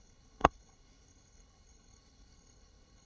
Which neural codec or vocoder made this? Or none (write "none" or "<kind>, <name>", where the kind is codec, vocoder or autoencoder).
codec, HILCodec